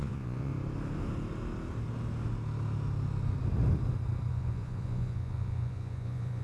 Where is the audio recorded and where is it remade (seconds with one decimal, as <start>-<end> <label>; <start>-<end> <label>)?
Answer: 0.0-0.5 remade; 0.5-4.3 recorded; 4.3-6.4 remade